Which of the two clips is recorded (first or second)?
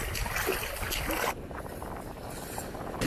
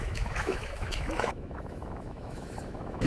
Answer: first